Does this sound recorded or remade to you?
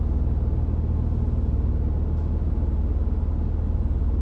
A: recorded